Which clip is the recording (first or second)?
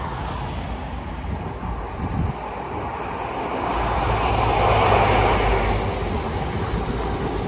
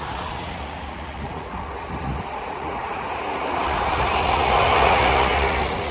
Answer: first